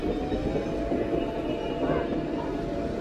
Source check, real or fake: real